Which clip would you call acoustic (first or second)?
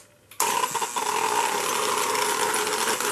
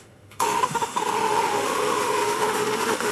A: first